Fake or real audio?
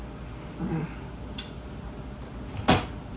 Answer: real